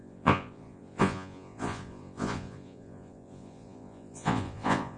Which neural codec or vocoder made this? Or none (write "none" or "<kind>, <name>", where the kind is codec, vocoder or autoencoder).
vocoder, Vocos